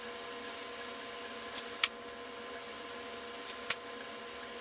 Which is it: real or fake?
real